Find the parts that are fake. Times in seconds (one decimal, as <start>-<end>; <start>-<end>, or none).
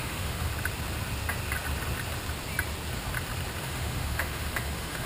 0.0-0.5; 3.6-5.1